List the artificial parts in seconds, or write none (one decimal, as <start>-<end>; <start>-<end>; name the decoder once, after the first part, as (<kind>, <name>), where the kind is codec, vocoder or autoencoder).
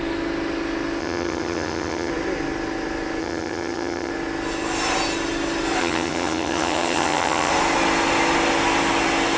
1.0-2.1 (vocoder, HiFi-GAN); 3.2-4.1; 5.8-7.5